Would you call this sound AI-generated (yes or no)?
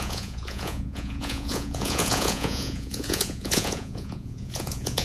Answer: yes